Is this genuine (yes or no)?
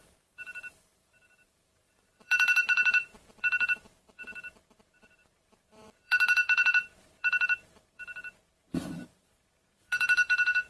no